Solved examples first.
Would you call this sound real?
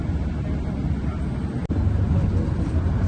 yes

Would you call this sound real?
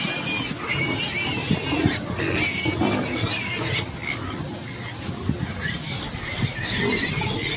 yes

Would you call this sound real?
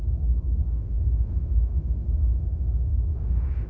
no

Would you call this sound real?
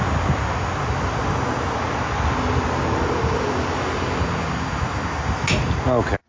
yes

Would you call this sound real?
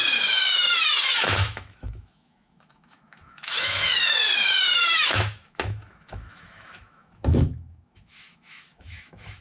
no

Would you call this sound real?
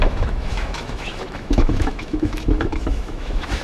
no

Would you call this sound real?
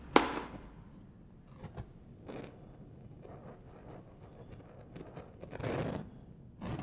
yes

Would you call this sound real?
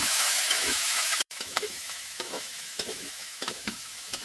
no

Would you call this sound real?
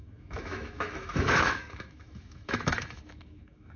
no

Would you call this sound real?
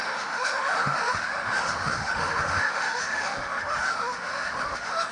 no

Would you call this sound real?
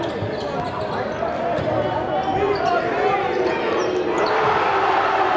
yes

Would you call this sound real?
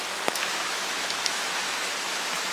no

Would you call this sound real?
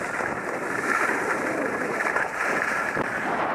yes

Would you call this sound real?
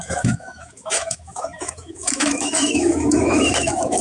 no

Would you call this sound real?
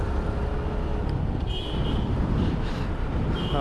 yes